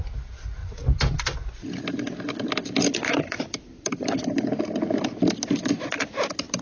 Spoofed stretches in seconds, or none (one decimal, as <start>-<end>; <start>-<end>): 3.0-4.4